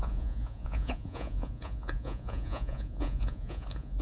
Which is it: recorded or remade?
remade